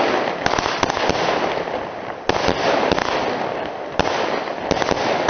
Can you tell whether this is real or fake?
real